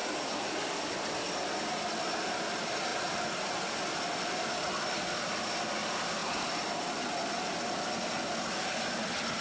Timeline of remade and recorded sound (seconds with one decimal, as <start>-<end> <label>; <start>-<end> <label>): 0.0-1.0 remade; 1.0-2.9 recorded; 2.9-3.8 remade; 3.8-6.2 recorded; 6.2-6.9 remade; 6.9-9.4 recorded

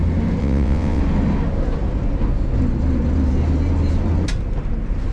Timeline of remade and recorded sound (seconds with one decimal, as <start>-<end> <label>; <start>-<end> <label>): 0.0-0.4 recorded; 0.4-1.0 remade; 1.0-5.1 recorded

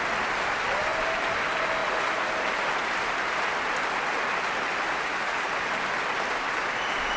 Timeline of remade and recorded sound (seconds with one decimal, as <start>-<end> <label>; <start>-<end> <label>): 0.0-1.8 recorded; 1.8-2.3 remade; 2.3-4.9 recorded; 4.9-5.4 remade; 5.4-7.2 recorded